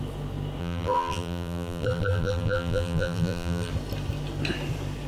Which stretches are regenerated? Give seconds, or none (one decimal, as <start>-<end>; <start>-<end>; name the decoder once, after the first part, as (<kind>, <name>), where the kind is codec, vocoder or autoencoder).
0.6-3.7 (vocoder, BigVGAN v2)